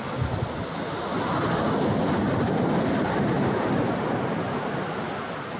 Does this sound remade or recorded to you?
recorded